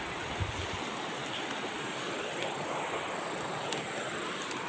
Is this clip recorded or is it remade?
recorded